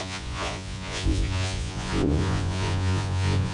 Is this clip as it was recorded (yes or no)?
no